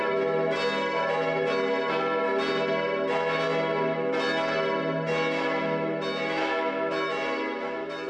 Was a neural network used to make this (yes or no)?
no